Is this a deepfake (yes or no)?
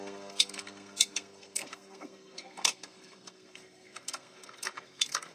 yes